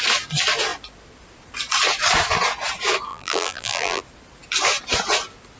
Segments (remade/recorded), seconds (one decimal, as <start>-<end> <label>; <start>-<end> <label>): 0.0-3.1 recorded; 3.1-4.0 remade; 4.0-5.6 recorded